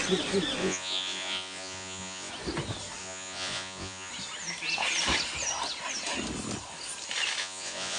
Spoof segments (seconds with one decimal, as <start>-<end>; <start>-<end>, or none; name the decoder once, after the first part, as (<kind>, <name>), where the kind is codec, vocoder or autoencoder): 0.6-2.3 (vocoder, Vocos); 3.0-4.1; 7.4-8.0